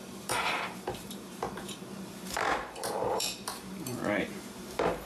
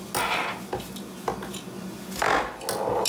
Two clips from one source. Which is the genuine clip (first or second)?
second